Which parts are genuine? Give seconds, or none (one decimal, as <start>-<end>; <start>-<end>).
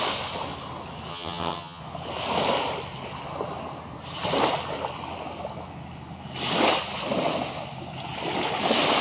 0.0-1.1; 1.8-9.0